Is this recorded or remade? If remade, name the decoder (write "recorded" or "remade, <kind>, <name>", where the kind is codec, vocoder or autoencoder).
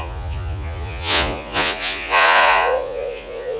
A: remade, vocoder, Vocos